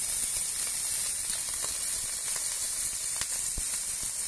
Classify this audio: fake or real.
real